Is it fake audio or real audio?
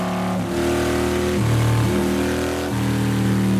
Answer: real